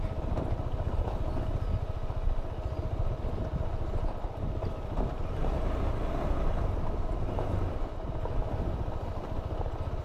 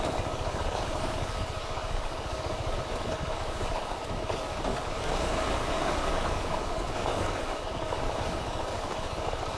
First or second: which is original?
first